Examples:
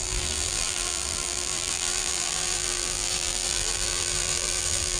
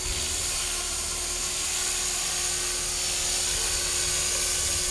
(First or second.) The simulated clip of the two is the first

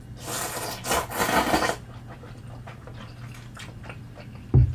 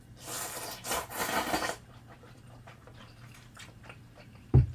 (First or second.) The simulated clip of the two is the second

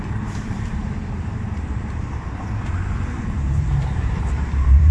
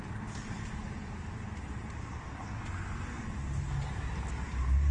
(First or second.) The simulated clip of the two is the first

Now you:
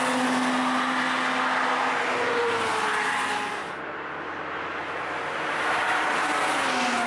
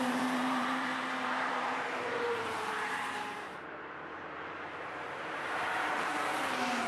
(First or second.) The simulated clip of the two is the second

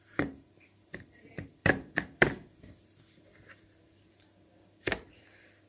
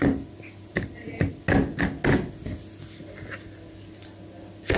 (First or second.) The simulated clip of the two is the first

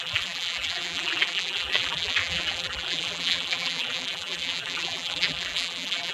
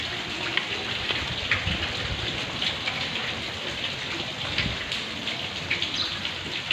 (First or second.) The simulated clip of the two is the first